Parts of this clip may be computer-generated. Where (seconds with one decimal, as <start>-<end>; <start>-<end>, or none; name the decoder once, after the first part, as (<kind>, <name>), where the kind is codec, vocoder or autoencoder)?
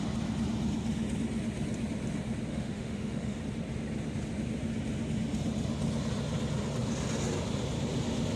2.5-3.4 (autoencoder, DAC-VAE)